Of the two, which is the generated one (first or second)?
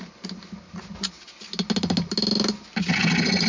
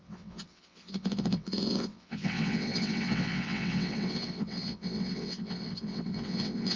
second